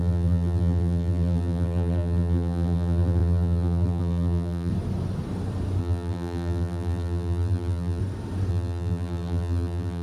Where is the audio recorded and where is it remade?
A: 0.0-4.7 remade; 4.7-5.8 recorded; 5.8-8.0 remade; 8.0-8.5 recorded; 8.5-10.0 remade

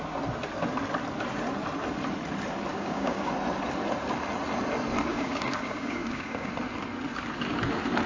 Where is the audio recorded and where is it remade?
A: 0.0-2.7 recorded; 2.7-3.3 remade; 3.3-5.1 recorded; 5.1-6.5 remade; 6.5-8.1 recorded

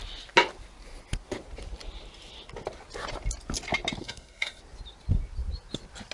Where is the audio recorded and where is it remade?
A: 0.0-4.0 recorded; 4.0-4.6 remade; 4.6-6.1 recorded

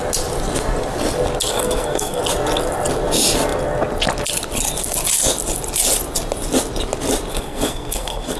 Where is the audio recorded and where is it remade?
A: 0.0-1.5 recorded; 1.5-2.2 remade; 2.2-7.3 recorded; 7.3-8.4 remade

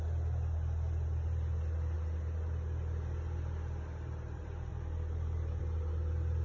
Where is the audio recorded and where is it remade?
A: 0.0-6.4 recorded

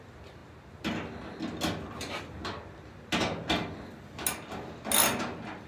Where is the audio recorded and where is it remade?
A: 0.0-5.7 recorded